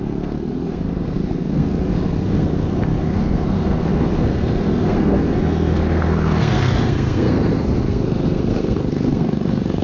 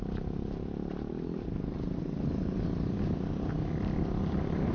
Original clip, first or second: second